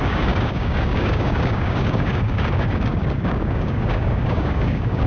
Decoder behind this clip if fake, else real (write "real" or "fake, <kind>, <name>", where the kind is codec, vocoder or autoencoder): fake, codec, DAC